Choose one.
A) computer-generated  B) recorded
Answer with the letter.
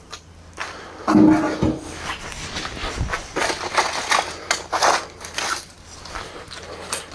B